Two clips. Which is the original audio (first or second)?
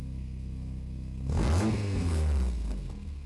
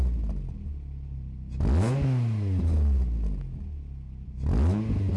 second